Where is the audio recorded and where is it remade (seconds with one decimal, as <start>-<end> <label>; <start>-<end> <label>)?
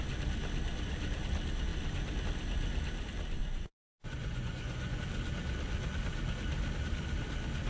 0.0-3.4 recorded; 3.4-5.0 remade; 5.0-7.7 recorded